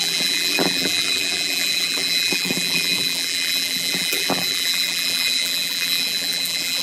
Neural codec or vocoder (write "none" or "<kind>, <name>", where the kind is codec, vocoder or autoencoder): vocoder, BigVGAN v2